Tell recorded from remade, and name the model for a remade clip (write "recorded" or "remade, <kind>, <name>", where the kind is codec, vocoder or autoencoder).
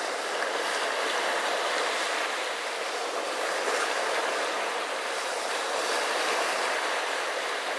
recorded